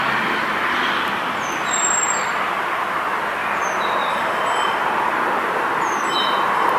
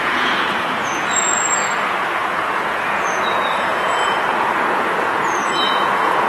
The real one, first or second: first